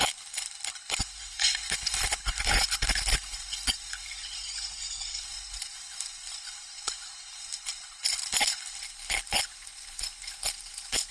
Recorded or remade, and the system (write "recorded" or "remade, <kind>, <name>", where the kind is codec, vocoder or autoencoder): remade, codec, HILCodec